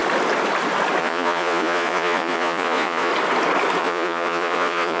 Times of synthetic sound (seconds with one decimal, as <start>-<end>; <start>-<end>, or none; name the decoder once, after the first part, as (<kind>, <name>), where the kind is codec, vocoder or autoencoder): 1.0-3.1 (vocoder, Vocos); 3.8-5.0